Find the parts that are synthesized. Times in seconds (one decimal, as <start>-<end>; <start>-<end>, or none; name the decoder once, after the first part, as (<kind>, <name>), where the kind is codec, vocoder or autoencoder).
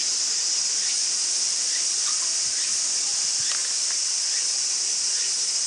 none